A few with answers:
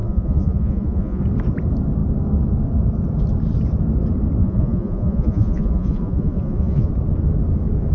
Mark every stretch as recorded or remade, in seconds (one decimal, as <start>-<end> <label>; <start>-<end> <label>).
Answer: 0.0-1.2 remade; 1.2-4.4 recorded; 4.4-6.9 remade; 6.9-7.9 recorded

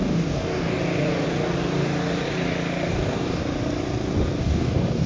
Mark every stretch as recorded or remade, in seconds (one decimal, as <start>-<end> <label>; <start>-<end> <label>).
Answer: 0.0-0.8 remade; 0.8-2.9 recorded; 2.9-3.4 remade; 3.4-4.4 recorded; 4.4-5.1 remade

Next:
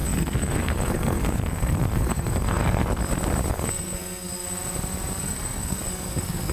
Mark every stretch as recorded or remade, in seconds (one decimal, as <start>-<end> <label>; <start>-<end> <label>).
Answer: 0.0-3.0 remade; 3.0-3.5 recorded; 3.5-4.3 remade; 4.3-5.2 recorded; 5.2-6.5 remade

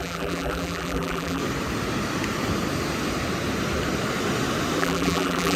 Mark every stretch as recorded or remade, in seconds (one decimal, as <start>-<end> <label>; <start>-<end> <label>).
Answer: 0.0-1.4 remade; 1.4-4.8 recorded; 4.8-5.6 remade

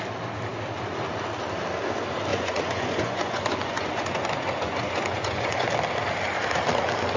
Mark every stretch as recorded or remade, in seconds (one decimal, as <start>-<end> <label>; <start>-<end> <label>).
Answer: 0.0-2.3 recorded; 2.3-5.7 remade; 5.7-7.2 recorded